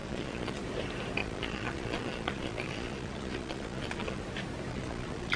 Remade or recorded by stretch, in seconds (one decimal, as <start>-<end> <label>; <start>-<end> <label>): 0.0-0.6 remade; 0.6-1.2 recorded; 1.2-4.2 remade; 4.2-4.7 recorded; 4.7-5.4 remade